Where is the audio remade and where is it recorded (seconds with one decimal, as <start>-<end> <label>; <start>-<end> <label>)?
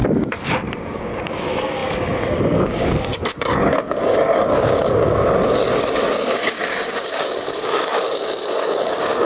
0.0-1.0 recorded; 1.0-9.3 remade